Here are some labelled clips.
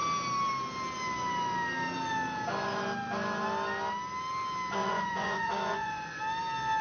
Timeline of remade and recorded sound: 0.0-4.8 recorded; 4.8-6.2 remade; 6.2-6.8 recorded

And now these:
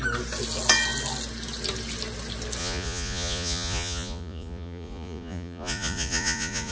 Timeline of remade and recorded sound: 0.0-2.6 recorded; 2.6-6.7 remade

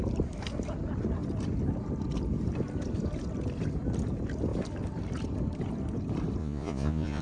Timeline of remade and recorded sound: 0.0-6.4 recorded; 6.4-7.2 remade

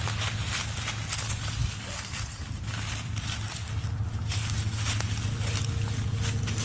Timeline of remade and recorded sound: 0.0-6.6 recorded

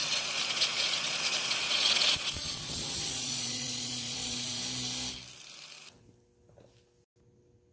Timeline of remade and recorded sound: 0.0-4.6 remade; 4.6-7.7 recorded

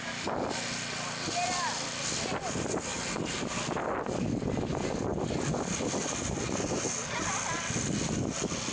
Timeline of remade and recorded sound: 0.0-8.7 recorded

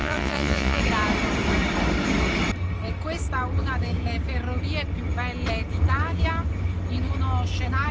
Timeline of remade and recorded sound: 0.0-0.8 remade; 0.8-7.9 recorded